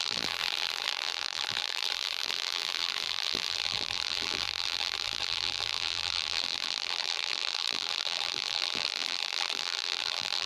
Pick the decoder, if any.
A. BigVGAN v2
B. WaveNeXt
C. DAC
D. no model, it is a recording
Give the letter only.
A